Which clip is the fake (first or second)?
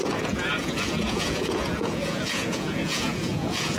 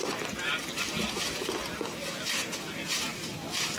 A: first